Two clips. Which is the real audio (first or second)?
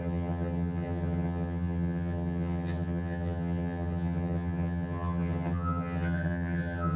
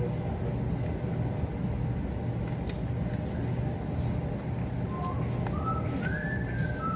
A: second